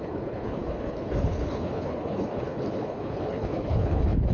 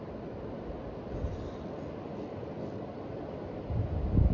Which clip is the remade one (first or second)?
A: first